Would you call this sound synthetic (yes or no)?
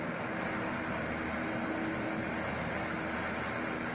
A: no